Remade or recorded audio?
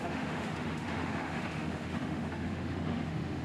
remade